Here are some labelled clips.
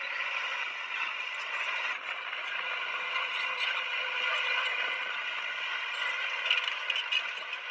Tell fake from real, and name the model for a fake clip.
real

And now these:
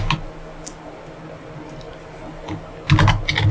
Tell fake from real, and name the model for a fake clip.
real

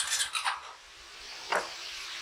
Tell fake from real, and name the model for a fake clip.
real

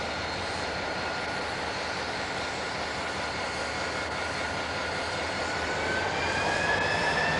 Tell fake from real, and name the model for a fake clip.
real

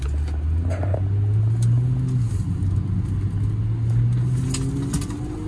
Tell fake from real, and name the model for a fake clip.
real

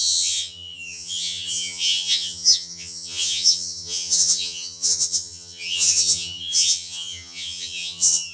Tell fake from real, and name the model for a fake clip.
fake, vocoder, HiFi-GAN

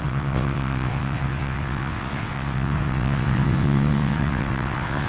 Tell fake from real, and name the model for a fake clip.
fake, vocoder, WaveNeXt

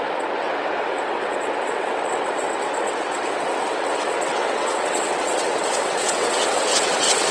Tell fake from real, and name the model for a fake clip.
fake, vocoder, WaveNeXt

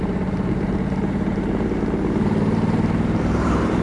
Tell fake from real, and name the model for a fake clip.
fake, vocoder, BigVGAN v2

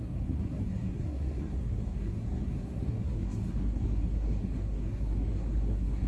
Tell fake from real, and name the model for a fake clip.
fake, codec, SNAC